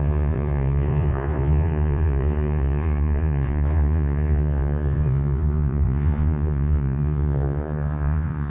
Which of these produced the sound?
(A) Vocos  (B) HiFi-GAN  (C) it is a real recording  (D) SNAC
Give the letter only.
A